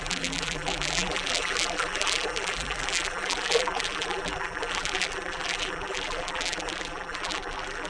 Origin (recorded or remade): remade